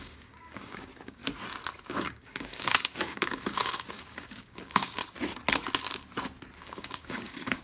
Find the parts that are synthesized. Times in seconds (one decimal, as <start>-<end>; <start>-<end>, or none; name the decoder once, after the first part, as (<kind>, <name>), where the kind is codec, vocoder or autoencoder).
0.0-1.2 (codec, DAC); 1.8-5.0; 6.6-7.6